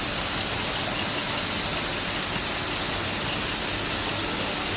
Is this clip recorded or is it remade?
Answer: recorded